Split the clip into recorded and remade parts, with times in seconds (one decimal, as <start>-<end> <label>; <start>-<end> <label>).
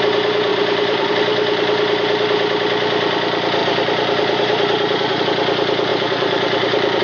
0.0-0.5 recorded; 0.5-1.1 remade; 1.1-3.6 recorded; 3.6-5.2 remade; 5.2-5.9 recorded; 5.9-7.0 remade